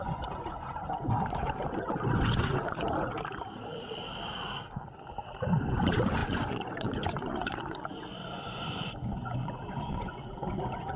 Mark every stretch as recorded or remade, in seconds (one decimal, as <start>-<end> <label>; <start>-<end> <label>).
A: 0.0-3.1 remade; 3.1-5.7 recorded; 5.7-11.0 remade